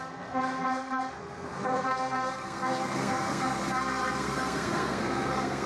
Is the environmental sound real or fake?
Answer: fake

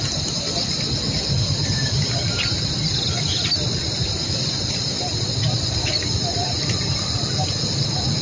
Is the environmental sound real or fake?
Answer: real